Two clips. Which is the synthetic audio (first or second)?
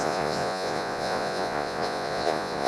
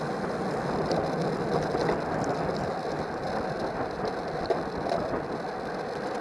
first